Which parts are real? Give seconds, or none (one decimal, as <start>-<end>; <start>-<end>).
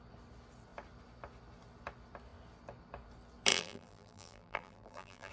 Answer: 0.0-3.5